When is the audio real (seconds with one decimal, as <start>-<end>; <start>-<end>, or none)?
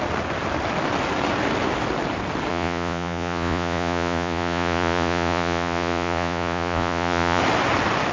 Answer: 0.0-2.5; 7.4-8.1